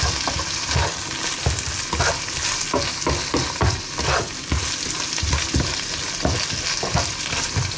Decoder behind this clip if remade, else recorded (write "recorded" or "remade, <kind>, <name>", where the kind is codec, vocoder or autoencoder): recorded